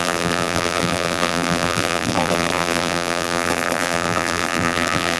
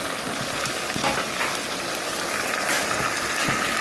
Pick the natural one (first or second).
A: second